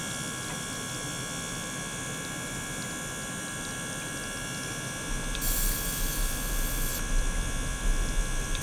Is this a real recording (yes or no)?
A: yes